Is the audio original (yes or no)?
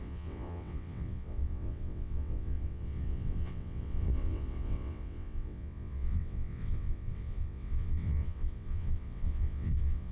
no